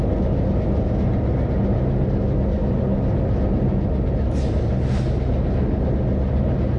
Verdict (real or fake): real